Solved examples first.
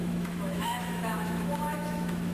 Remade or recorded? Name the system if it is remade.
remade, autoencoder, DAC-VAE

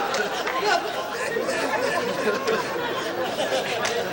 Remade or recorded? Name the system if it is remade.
recorded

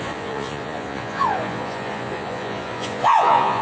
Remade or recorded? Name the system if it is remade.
remade, vocoder, Vocos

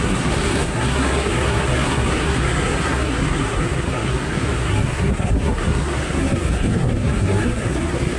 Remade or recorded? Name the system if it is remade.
remade, codec, SNAC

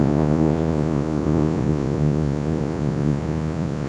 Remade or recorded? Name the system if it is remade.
remade, vocoder, Vocos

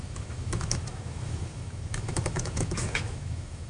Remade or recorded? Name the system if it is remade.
remade, autoencoder, DAC-VAE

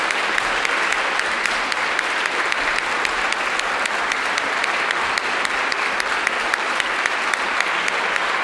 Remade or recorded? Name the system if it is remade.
recorded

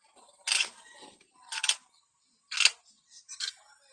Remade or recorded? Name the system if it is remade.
recorded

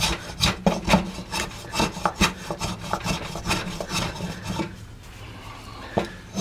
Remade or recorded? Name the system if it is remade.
recorded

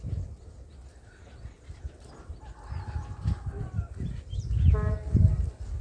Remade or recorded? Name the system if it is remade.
recorded